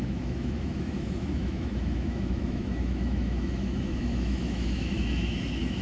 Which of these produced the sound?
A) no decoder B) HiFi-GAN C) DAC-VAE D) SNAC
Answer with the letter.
C